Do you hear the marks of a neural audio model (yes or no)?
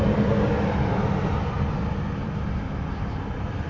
no